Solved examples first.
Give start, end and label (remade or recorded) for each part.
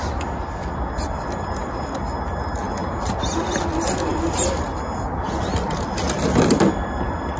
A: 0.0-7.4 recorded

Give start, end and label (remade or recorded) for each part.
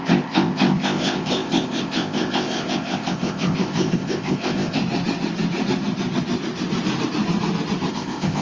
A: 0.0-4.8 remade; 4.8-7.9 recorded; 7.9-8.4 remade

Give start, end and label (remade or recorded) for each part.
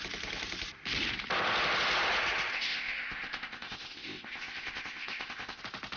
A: 0.0-2.5 recorded; 2.5-5.6 remade; 5.6-6.0 recorded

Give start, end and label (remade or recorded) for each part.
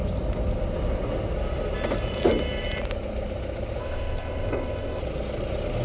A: 0.0-3.8 recorded; 3.8-5.0 remade; 5.0-5.8 recorded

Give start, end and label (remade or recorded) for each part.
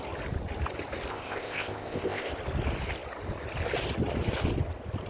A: 0.0-1.1 recorded; 1.1-2.3 remade; 2.3-5.1 recorded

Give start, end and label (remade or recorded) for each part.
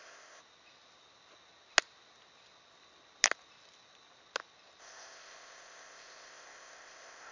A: 0.0-0.4 remade; 0.4-4.8 recorded; 4.8-7.3 remade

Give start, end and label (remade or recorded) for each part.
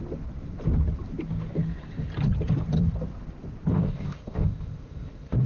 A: 0.0-3.7 recorded; 3.7-5.5 remade